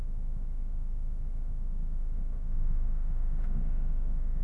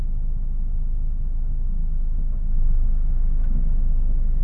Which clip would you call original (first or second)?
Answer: second